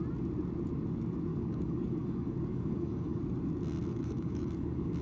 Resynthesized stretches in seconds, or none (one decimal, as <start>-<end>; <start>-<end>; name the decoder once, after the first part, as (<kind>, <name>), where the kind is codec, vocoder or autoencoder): 1.3-3.2 (codec, DAC); 3.9-5.0